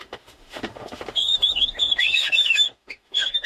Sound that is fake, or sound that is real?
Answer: fake